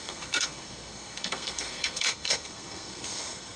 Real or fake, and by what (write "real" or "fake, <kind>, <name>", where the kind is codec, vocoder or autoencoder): fake, codec, SNAC